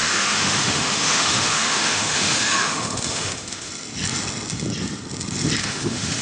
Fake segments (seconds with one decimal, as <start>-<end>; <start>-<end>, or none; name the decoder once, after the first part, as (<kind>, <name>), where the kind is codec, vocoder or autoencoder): 0.0-3.7 (autoencoder, DAC-VAE); 5.6-6.2